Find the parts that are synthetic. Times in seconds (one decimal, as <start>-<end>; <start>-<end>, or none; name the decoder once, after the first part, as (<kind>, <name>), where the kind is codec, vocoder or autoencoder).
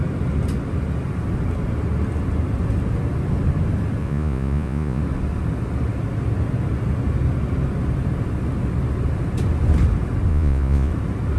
4.0-5.0 (vocoder, Vocos); 10.3-10.9